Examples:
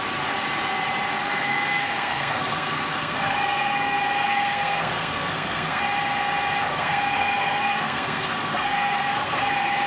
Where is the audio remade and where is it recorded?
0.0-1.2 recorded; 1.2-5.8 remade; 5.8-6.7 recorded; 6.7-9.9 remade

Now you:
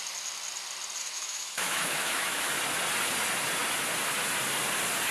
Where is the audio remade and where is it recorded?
0.0-1.0 recorded; 1.0-2.5 remade; 2.5-5.1 recorded

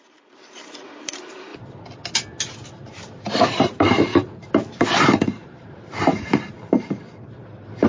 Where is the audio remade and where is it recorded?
0.0-1.5 remade; 1.5-2.7 recorded; 2.7-4.1 remade; 4.1-5.6 recorded; 5.6-7.9 remade

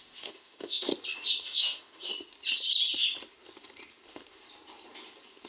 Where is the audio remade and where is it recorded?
0.0-0.9 remade; 0.9-1.4 recorded; 1.4-2.1 remade; 2.1-5.5 recorded

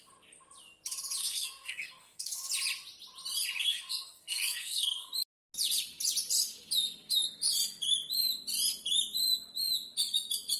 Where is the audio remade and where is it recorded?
0.0-1.2 recorded; 1.2-2.5 remade; 2.5-3.6 recorded; 3.6-5.1 remade; 5.1-10.6 recorded

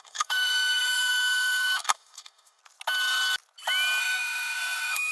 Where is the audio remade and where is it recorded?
0.0-2.6 remade; 2.6-4.0 recorded; 4.0-5.1 remade

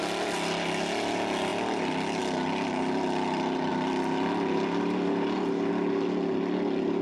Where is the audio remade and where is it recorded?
0.0-7.0 recorded